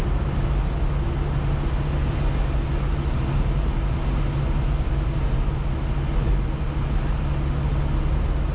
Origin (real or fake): real